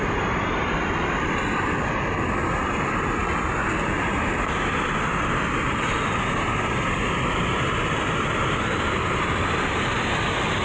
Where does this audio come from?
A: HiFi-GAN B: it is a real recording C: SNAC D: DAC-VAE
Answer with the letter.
B